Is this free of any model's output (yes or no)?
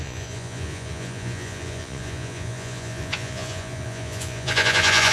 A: no